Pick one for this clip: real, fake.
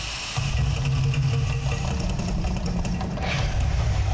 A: real